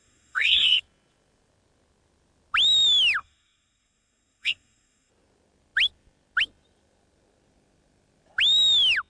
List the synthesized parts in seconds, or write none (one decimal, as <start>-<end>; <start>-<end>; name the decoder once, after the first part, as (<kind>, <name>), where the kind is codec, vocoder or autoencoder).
0.0-0.8 (codec, SNAC); 3.2-5.1